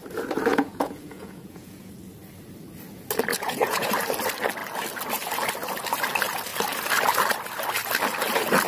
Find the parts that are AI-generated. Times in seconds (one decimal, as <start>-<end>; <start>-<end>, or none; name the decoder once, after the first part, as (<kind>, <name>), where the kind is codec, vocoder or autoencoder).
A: 0.5-1.9 (vocoder, Vocos); 3.3-3.9